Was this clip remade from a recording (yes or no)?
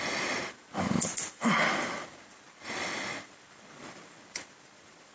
no